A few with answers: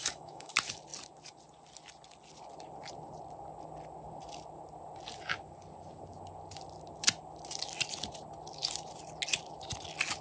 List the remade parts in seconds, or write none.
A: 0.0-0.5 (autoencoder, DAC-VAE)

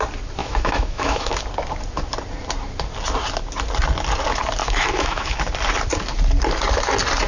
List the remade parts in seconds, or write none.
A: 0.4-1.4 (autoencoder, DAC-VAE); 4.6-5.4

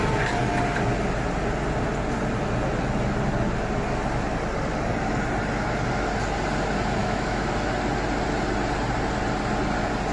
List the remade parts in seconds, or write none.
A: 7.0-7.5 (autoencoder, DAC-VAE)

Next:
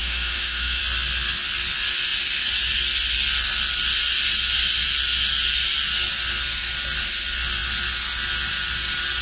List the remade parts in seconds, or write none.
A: 0.0-0.8 (autoencoder, DAC-VAE)